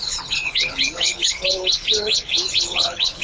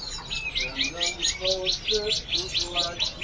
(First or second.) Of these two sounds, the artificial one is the first